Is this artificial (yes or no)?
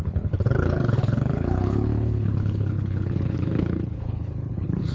yes